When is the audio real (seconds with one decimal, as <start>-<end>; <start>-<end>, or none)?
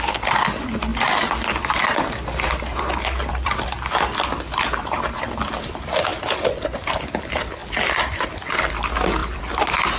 0.0-0.9; 5.4-6.1; 7.0-7.6; 8.7-9.2